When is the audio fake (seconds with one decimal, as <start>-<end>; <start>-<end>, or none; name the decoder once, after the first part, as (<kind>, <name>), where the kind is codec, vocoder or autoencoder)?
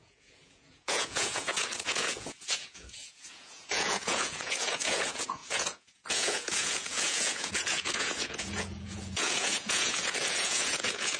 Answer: 0.0-11.2 (vocoder, Vocos)